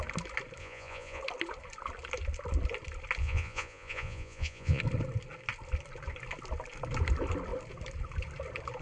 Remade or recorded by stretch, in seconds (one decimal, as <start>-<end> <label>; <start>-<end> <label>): 0.0-0.6 recorded; 0.6-1.2 remade; 1.2-3.2 recorded; 3.2-4.8 remade; 4.8-8.8 recorded